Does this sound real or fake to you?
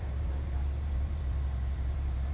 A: fake